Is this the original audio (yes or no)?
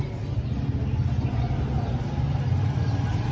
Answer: yes